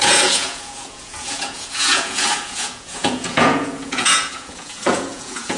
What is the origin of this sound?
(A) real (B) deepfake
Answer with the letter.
B